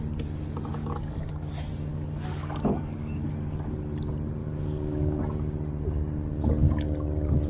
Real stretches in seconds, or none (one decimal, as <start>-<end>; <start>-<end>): 0.0-0.7; 1.5-1.9; 3.3-4.4; 5.2-7.5